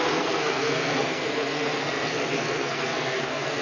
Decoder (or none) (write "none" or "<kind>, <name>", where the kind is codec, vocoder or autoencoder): codec, SNAC